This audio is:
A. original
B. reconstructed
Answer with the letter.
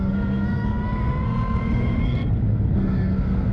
B